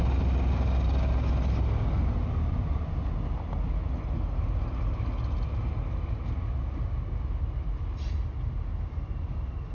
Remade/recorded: recorded